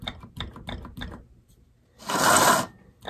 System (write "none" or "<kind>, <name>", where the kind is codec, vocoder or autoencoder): none